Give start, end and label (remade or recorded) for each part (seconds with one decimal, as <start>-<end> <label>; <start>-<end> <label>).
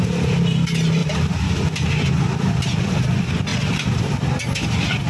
0.0-1.0 recorded; 1.0-2.1 remade; 2.1-3.5 recorded; 3.5-4.0 remade; 4.0-5.1 recorded